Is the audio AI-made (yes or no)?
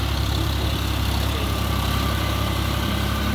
yes